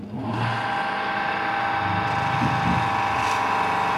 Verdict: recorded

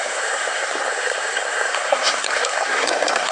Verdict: remade